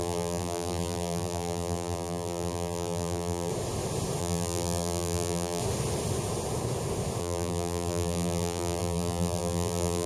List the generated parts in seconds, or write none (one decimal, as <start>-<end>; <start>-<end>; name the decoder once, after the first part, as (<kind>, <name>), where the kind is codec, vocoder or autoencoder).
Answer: 0.0-3.5 (vocoder, BigVGAN v2); 4.2-5.6; 7.2-10.1